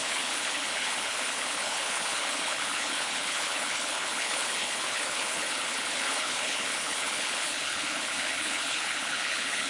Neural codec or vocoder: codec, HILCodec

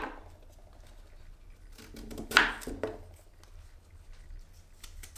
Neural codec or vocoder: none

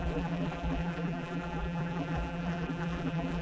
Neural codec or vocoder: vocoder, BigVGAN v2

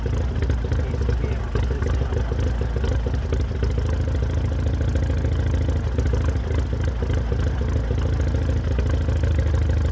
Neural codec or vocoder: none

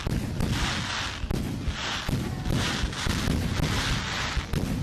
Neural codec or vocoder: none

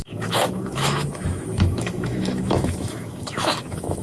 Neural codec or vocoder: autoencoder, DAC-VAE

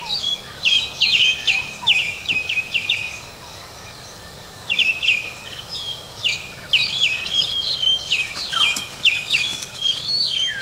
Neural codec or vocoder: codec, DAC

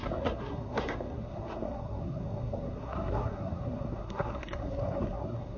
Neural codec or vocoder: codec, SNAC